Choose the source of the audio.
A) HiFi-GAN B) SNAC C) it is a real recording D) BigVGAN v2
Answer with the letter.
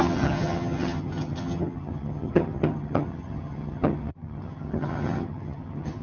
A